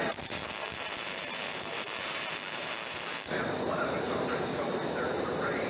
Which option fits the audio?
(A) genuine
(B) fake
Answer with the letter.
B